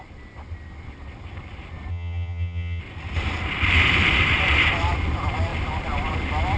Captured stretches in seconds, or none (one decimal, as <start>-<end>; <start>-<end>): 0.0-1.9; 2.8-6.6